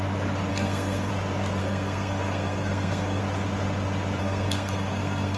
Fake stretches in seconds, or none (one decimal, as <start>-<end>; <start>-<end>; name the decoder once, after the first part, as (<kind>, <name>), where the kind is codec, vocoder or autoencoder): 0.5-1.1 (codec, SNAC); 1.6-3.2; 4.2-5.4

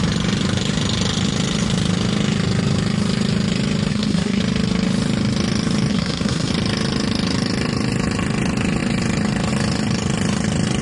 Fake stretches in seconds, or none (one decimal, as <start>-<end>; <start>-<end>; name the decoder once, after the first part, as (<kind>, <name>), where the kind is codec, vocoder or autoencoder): 3.9-4.4 (codec, SNAC); 5.9-6.5

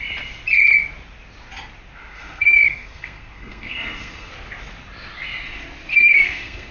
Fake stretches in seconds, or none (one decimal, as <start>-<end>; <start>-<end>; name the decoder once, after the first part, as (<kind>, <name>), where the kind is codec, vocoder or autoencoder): 2.1-4.3 (codec, SNAC); 5.9-6.7

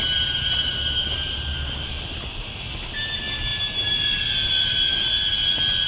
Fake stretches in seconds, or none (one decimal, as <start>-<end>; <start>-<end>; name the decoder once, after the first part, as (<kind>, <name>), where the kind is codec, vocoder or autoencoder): none